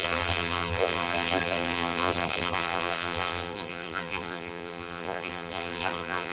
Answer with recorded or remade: remade